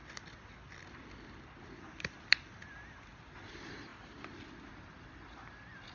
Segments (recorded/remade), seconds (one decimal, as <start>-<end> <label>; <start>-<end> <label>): 0.0-3.5 recorded; 3.5-3.9 remade; 3.9-4.7 recorded; 4.7-5.9 remade